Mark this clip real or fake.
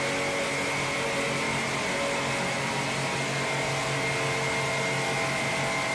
real